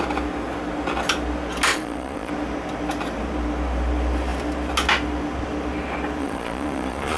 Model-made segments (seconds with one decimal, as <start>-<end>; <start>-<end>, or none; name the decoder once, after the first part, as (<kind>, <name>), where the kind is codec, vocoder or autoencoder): 1.7-2.3 (vocoder, Vocos); 6.2-7.2